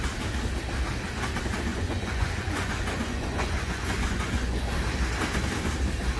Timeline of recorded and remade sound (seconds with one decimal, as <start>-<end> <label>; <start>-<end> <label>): 0.0-1.7 recorded; 1.7-4.7 remade; 4.7-6.2 recorded